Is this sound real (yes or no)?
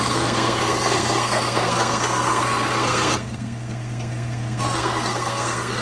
no